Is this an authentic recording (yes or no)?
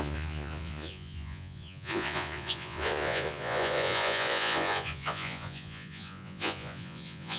no